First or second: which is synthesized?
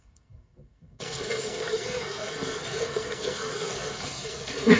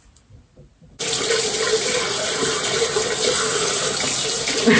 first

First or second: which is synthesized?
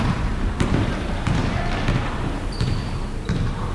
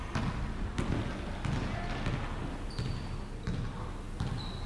first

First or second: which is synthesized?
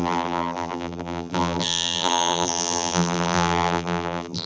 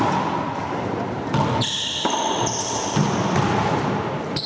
first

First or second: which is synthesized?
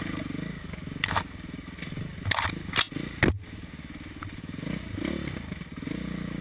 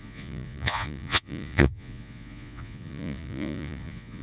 second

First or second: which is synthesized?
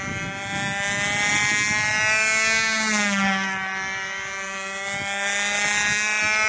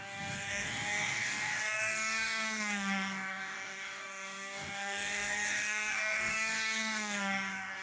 second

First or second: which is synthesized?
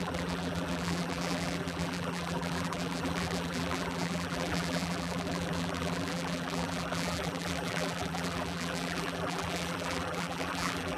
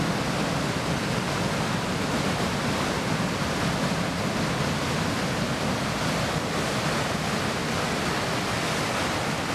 first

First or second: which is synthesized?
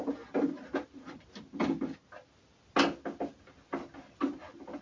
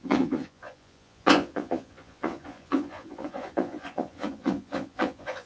second